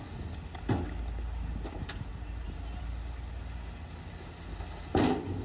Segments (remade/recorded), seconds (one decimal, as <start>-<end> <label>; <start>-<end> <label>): 0.0-2.1 recorded; 2.1-3.0 remade; 3.0-5.4 recorded